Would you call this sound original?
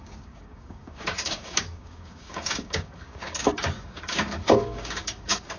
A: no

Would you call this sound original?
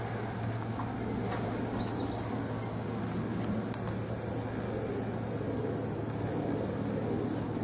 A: yes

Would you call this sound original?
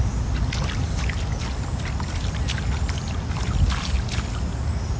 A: yes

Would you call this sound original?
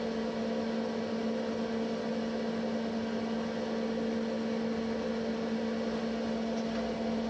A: yes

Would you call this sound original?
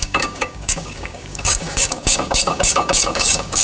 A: no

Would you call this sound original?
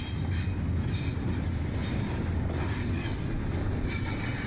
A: yes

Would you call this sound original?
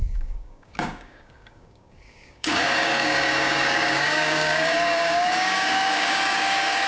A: no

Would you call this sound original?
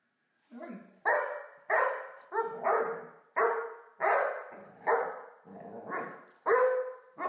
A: yes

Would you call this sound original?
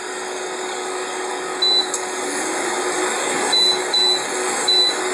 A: no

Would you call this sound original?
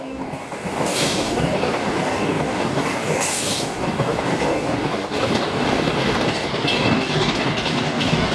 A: no